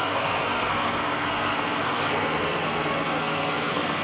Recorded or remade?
remade